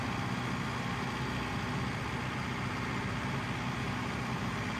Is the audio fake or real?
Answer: real